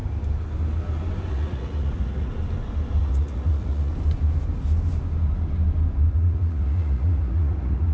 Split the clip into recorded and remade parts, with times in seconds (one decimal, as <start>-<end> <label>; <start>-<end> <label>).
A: 0.0-1.3 recorded; 1.3-2.3 remade; 2.3-3.0 recorded; 3.0-3.9 remade; 3.9-6.1 recorded; 6.1-7.9 remade